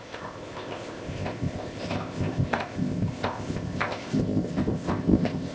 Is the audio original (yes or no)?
no